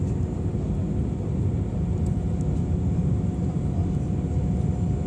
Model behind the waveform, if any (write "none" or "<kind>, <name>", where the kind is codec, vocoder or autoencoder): none